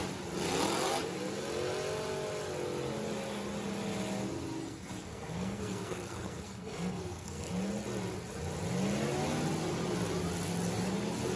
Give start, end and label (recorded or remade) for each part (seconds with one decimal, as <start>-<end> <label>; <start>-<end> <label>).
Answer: 0.0-4.6 recorded; 4.6-7.5 remade; 7.5-11.4 recorded